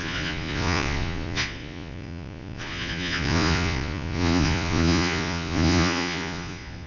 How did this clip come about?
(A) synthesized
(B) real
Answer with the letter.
A